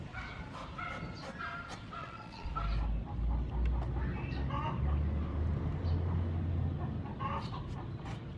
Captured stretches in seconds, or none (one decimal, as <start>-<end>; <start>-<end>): 0.0-2.0; 2.5-8.4

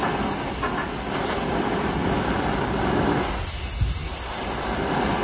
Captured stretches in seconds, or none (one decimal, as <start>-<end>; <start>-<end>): 0.0-5.2

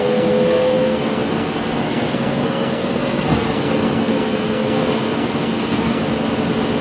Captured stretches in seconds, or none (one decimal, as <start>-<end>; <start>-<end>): 6.0-6.8

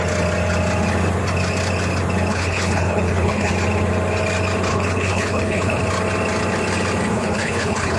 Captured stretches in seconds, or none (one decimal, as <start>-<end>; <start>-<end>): 0.0-2.3; 3.5-4.7; 5.8-7.1